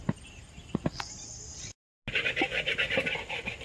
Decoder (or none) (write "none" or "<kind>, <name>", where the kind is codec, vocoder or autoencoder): none